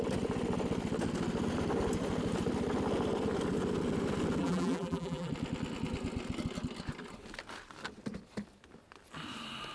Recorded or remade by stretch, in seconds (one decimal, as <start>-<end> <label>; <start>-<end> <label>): 0.0-4.4 recorded; 4.4-5.3 remade; 5.3-9.7 recorded